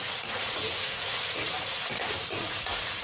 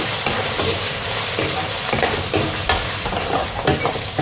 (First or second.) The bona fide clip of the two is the second